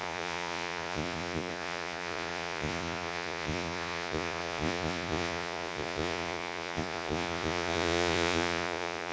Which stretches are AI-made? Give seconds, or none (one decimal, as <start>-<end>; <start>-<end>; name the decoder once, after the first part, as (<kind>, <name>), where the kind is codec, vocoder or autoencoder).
0.0-9.1 (vocoder, Vocos)